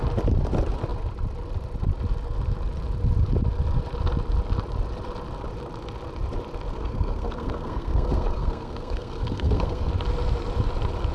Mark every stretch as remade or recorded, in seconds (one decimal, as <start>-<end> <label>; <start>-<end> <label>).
0.0-6.7 recorded; 6.7-9.9 remade; 9.9-11.1 recorded